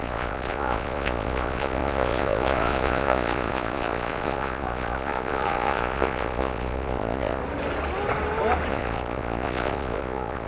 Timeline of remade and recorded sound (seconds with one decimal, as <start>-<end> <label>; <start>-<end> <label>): 0.0-7.4 remade; 7.4-8.7 recorded; 8.7-10.5 remade